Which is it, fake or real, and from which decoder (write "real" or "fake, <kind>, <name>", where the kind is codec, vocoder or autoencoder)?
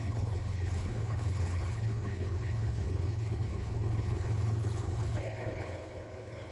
fake, codec, HILCodec